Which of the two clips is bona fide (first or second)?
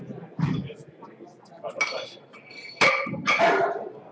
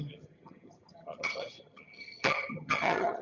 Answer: first